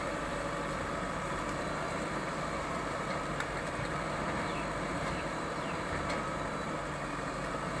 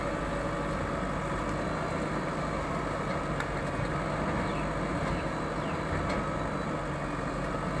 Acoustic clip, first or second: second